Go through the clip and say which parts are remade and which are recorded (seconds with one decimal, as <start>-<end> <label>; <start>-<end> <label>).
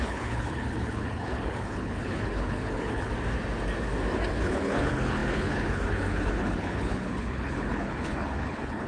0.0-3.1 remade; 3.1-4.3 recorded; 4.3-8.9 remade